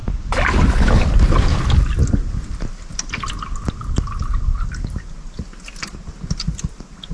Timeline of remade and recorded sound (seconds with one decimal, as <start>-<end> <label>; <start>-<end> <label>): 0.0-7.1 recorded